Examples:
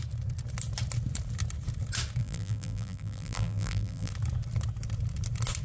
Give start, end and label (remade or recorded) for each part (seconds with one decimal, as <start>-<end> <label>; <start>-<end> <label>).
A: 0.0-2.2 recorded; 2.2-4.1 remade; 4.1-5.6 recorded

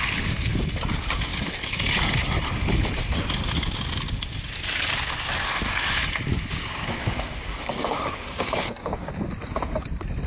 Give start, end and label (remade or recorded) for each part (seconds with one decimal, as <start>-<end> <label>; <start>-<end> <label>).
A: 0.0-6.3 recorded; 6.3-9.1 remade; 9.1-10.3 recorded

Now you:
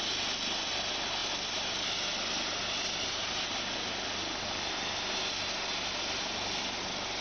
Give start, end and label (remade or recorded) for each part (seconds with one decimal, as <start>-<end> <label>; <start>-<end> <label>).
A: 0.0-7.2 recorded